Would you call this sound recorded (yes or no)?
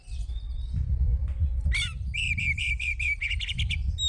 yes